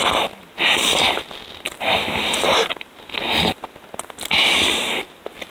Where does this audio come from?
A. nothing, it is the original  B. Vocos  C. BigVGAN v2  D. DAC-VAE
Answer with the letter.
A